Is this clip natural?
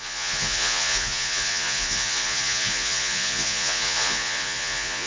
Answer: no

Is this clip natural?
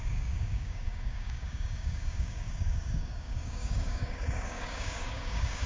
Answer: no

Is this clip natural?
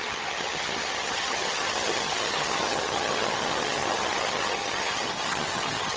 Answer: no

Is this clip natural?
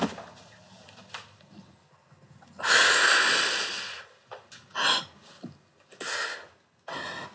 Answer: yes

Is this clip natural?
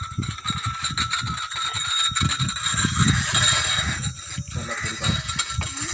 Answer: yes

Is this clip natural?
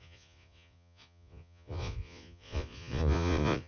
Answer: no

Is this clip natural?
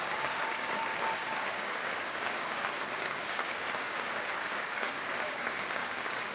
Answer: no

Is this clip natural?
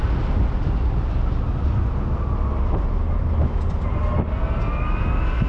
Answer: yes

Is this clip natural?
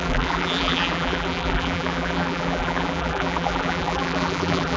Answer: no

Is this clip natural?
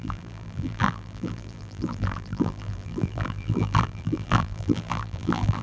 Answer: no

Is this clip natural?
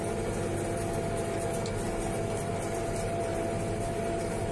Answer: yes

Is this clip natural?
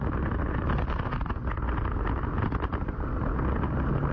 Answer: yes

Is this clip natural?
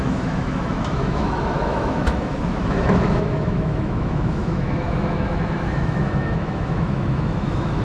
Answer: no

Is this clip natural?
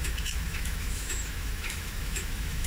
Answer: no